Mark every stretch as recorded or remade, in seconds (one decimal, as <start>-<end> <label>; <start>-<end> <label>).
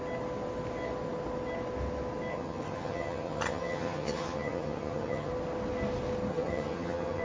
0.0-2.3 recorded; 2.3-5.3 remade; 5.3-6.3 recorded; 6.3-7.2 remade